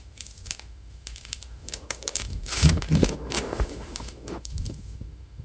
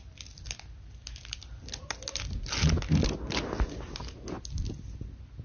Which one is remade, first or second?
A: first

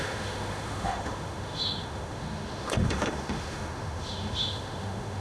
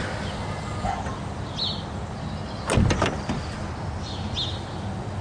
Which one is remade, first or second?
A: first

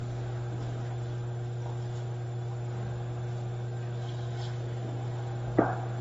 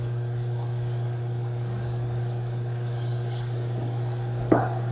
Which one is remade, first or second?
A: second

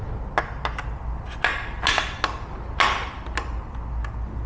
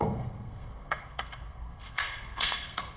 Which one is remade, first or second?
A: second